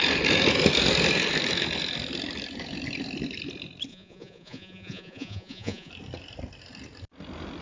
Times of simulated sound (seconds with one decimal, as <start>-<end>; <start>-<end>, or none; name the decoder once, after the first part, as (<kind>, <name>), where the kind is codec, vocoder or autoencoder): 3.9-5.9 (vocoder, Vocos)